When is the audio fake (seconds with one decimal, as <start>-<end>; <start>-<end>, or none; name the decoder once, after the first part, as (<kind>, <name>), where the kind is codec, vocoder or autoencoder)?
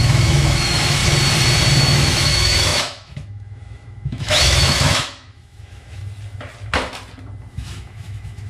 0.0-1.0 (autoencoder, DAC-VAE); 1.8-6.0; 7.5-8.5